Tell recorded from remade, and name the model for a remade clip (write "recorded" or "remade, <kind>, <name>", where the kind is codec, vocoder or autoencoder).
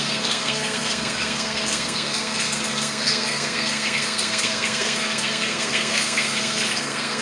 remade, codec, SNAC